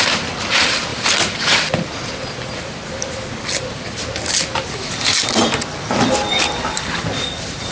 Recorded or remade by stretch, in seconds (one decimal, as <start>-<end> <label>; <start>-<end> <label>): 0.0-0.9 recorded; 0.9-1.6 remade; 1.6-7.7 recorded